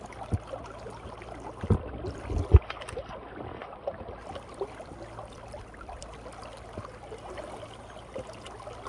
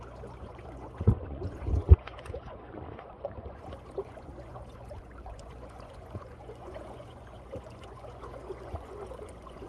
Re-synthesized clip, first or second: second